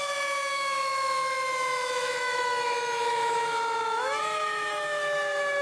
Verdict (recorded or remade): remade